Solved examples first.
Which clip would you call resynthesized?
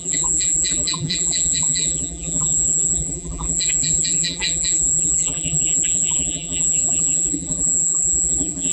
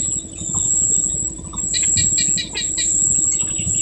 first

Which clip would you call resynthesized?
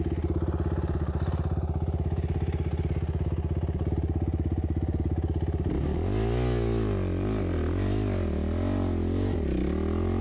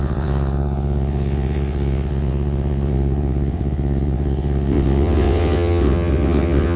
second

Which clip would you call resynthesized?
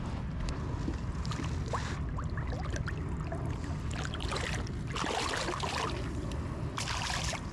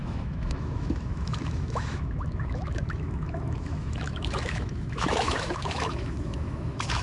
second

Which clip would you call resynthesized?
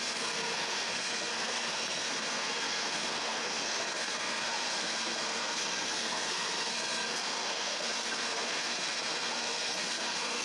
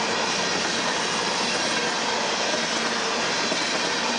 first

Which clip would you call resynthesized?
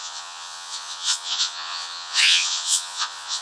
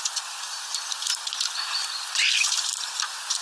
first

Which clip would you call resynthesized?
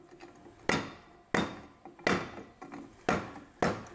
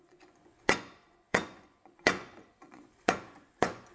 second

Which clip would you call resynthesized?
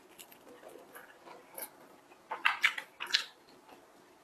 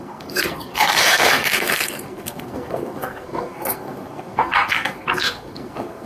second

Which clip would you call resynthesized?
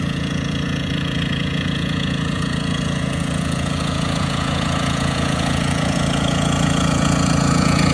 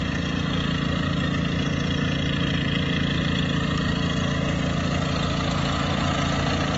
first